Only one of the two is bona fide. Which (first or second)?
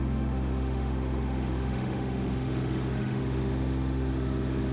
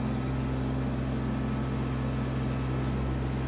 second